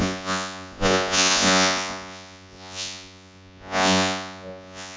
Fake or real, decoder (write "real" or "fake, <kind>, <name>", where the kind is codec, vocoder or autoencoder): fake, vocoder, Vocos